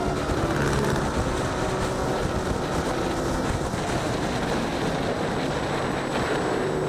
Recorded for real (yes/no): yes